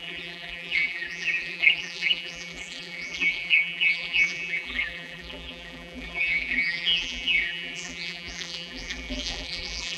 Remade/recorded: remade